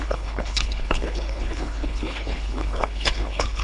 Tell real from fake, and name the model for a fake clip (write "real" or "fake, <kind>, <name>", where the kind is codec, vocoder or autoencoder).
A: fake, codec, HILCodec